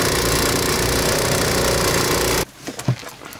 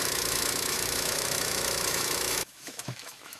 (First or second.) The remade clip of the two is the second